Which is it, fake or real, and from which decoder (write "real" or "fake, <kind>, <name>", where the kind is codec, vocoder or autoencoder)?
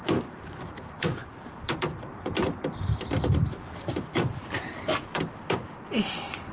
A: fake, vocoder, BigVGAN v2